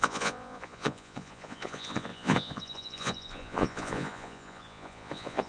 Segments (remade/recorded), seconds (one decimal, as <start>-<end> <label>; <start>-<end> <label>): 0.0-5.5 remade